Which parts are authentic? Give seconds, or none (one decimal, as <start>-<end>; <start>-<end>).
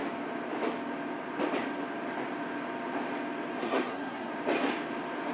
0.0-3.6; 4.3-5.3